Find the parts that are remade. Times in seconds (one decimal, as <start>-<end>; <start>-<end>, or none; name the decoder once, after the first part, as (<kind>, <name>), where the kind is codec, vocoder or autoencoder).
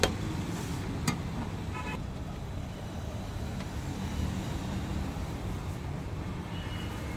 none